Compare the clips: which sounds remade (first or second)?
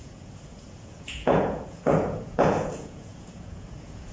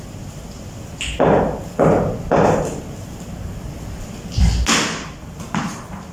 first